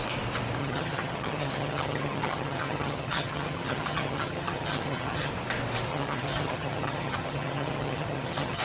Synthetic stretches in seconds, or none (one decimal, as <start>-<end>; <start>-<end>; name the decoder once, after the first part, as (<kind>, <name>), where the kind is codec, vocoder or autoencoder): 0.6-5.3 (vocoder, HiFi-GAN); 5.9-8.6